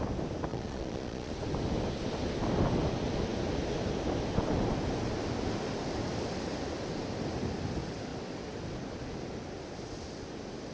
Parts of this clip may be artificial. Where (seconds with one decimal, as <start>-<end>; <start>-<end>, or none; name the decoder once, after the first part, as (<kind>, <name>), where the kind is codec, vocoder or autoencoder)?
0.5-1.3 (vocoder, Vocos)